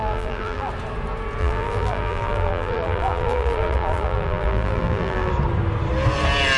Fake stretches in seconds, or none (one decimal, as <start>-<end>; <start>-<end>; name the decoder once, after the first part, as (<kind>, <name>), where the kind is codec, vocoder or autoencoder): 0.0-0.7 (vocoder, BigVGAN v2); 1.4-5.3